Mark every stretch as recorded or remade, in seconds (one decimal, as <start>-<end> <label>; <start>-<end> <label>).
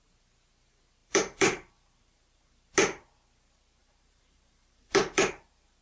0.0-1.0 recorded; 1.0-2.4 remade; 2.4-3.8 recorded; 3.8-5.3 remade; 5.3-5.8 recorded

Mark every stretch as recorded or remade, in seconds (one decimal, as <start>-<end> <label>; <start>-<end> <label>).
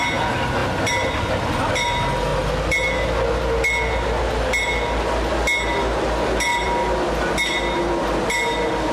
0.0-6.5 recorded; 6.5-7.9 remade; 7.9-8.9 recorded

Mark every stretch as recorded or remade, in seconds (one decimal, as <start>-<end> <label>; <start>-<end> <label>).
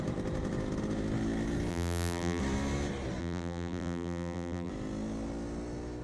0.0-1.7 recorded; 1.7-2.4 remade; 2.4-3.2 recorded; 3.2-4.7 remade; 4.7-6.0 recorded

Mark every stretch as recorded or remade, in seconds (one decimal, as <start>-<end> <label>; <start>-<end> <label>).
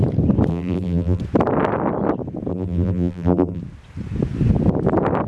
0.0-0.5 recorded; 0.5-1.2 remade; 1.2-2.5 recorded; 2.5-3.6 remade; 3.6-5.3 recorded